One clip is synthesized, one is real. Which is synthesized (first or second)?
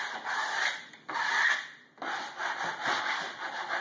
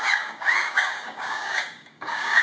second